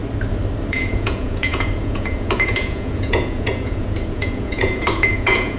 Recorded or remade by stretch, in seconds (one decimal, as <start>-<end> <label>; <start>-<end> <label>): 0.0-0.7 recorded; 0.7-5.6 remade